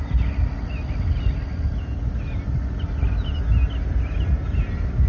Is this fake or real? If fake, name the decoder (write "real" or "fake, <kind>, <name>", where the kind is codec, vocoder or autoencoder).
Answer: real